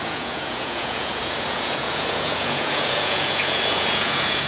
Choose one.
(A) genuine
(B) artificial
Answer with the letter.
B